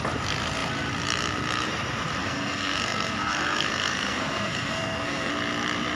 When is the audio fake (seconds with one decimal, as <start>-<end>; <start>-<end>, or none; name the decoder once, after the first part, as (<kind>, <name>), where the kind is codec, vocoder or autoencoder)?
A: 2.2-5.3 (codec, SNAC)